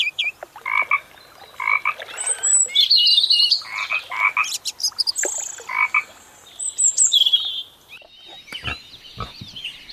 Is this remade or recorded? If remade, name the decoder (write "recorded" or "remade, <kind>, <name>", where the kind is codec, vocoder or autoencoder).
recorded